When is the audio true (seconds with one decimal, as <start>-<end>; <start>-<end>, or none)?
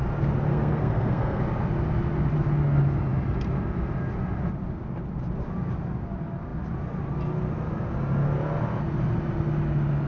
0.0-0.5; 1.4-10.1